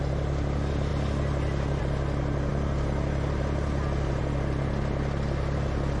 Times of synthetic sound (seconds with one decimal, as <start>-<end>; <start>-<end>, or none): none

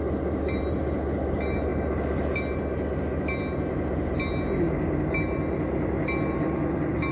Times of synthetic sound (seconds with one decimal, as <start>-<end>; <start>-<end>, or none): none

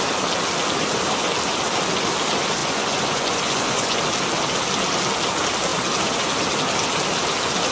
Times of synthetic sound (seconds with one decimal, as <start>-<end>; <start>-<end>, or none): 2.6-4.0